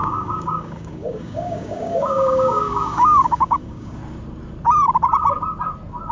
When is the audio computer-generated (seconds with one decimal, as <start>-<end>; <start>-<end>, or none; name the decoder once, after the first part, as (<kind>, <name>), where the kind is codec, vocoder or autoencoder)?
0.0-4.0 (codec, DAC)